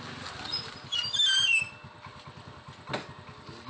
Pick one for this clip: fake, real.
real